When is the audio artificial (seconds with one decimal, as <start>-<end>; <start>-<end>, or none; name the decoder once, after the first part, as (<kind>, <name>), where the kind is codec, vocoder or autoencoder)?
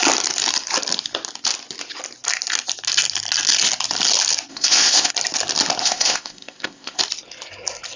4.5-5.1 (codec, ZipCodec); 5.8-7.0